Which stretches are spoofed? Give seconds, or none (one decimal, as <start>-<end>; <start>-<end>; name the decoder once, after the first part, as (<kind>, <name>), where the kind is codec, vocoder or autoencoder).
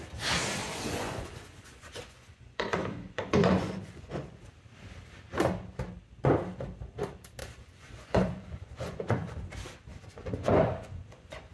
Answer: 0.6-4.4 (vocoder, Vocos); 7.4-9.5; 9.9-11.5